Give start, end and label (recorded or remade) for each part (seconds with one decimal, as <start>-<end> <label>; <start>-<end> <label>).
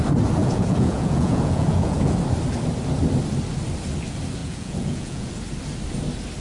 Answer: 0.0-0.4 recorded; 0.4-2.2 remade; 2.2-4.4 recorded; 4.4-5.3 remade; 5.3-6.4 recorded